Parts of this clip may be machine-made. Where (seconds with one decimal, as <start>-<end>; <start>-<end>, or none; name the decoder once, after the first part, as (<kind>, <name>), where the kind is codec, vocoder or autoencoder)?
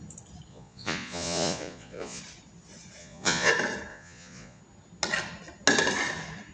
0.5-2.2 (vocoder, Vocos); 3.0-3.5; 3.9-4.6